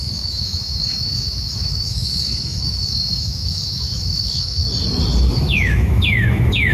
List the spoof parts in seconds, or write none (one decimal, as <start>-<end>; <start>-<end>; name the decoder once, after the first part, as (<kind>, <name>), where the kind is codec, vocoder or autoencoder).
0.0-4.6 (autoencoder, DAC-VAE); 5.3-6.7

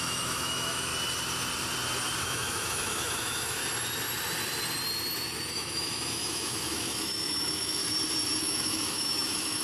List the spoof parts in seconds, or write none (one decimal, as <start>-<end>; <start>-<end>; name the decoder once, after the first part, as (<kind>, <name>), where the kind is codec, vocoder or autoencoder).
0.0-0.9 (autoencoder, DAC-VAE); 2.2-3.6; 5.5-7.8; 8.4-9.6

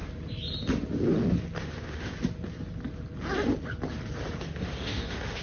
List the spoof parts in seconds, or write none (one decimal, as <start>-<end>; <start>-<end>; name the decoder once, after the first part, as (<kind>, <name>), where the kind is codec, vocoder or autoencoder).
1.6-2.1 (autoencoder, DAC-VAE); 4.4-5.4

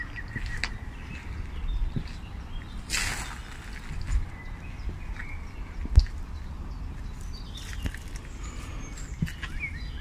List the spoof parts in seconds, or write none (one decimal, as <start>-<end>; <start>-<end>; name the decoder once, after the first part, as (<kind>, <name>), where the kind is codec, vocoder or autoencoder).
none

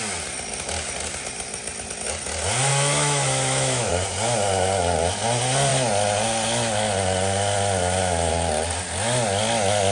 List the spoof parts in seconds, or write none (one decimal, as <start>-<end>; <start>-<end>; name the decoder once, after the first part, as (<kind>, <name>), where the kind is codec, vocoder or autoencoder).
2.7-3.9 (autoencoder, DAC-VAE)

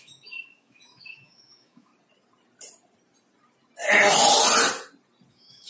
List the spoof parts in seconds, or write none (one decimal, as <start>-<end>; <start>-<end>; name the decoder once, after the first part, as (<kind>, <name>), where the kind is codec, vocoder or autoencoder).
0.0-1.9 (autoencoder, DAC-VAE); 5.3-5.7

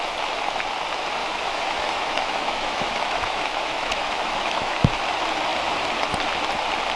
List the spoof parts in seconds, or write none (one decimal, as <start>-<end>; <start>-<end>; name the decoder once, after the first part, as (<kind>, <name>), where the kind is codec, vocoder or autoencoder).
1.2-5.0 (autoencoder, DAC-VAE)

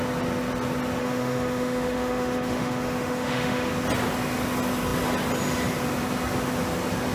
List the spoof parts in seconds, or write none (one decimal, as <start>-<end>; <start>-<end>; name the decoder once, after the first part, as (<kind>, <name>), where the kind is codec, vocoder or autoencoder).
1.0-3.7 (autoencoder, DAC-VAE)